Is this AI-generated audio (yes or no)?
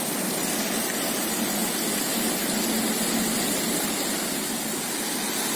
no